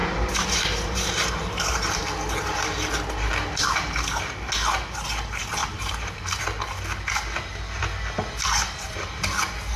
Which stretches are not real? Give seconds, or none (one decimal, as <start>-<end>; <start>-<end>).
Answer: 0.0-2.0; 5.6-6.4; 8.6-9.4